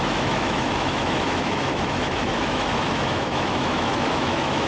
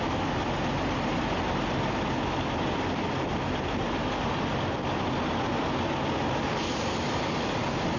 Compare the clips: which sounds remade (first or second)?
first